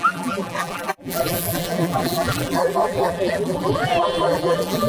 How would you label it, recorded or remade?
remade